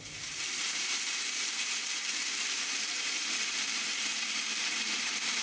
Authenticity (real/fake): fake